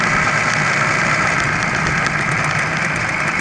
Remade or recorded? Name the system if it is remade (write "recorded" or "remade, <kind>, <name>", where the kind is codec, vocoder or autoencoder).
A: recorded